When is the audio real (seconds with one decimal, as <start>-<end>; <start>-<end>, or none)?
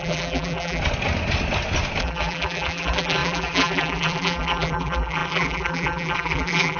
0.8-2.0